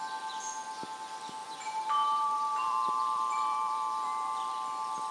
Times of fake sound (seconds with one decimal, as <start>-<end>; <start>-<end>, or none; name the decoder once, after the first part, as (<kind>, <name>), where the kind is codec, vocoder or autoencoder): 1.4-4.5 (vocoder, BigVGAN v2)